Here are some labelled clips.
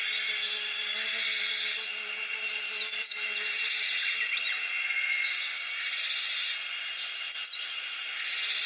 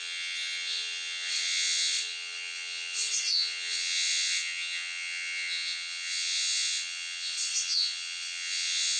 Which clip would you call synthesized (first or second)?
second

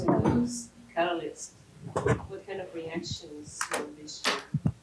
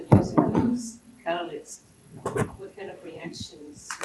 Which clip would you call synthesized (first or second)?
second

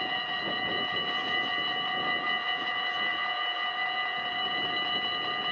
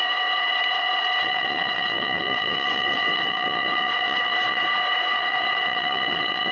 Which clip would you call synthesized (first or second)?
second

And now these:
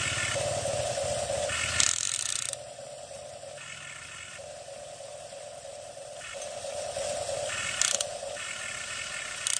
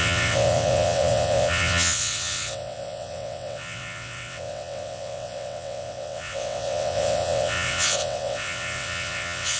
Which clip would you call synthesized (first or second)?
second